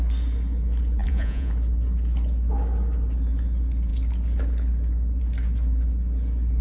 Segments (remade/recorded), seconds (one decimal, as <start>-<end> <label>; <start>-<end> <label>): 0.0-1.0 recorded; 1.0-1.5 remade; 1.5-6.6 recorded